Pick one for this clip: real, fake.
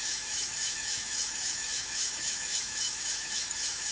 fake